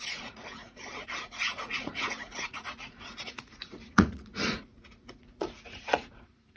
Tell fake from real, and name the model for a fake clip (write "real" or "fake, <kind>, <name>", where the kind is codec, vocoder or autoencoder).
fake, vocoder, Vocos